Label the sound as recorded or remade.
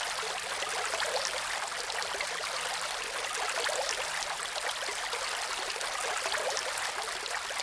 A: recorded